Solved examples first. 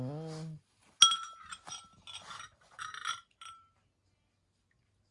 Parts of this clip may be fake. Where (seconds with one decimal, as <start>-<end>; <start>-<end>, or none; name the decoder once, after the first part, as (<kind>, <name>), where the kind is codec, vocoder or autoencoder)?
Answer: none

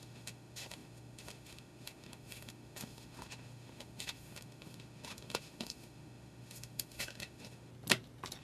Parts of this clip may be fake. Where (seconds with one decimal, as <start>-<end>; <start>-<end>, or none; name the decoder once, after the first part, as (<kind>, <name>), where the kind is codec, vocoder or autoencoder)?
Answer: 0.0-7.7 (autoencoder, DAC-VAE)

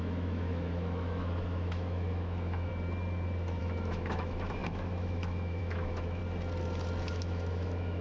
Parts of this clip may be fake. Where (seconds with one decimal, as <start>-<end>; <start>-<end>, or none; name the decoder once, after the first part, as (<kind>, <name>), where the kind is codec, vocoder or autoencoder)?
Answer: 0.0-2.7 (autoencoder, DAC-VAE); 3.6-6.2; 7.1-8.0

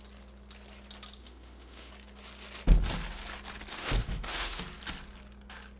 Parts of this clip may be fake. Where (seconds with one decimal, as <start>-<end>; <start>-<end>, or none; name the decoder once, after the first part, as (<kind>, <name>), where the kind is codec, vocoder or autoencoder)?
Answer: 1.2-1.9 (autoencoder, DAC-VAE); 3.7-4.6

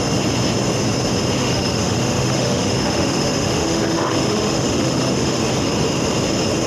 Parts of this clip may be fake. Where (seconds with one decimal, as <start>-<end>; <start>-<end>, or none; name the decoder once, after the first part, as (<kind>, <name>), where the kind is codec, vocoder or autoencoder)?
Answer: 1.4-5.4 (autoencoder, DAC-VAE)

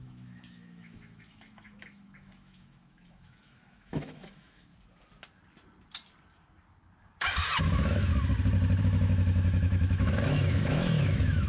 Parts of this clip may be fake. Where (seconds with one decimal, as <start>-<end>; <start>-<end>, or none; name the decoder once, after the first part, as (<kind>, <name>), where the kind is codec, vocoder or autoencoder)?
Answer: 0.0-4.7 (autoencoder, DAC-VAE); 7.6-8.1; 8.8-11.5